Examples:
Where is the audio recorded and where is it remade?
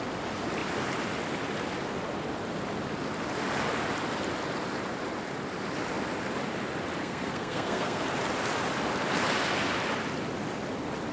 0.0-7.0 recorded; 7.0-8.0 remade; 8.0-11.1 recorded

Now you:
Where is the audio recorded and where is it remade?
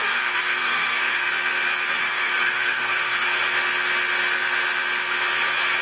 0.0-1.3 remade; 1.3-2.0 recorded; 2.0-3.4 remade; 3.4-5.8 recorded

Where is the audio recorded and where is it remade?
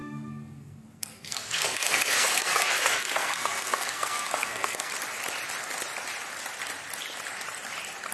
0.0-4.9 remade; 4.9-8.1 recorded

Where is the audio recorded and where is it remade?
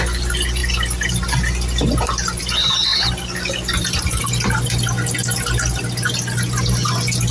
0.0-7.3 recorded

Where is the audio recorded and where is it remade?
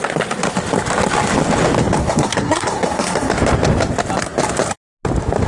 0.0-2.0 recorded; 2.0-3.3 remade; 3.3-5.5 recorded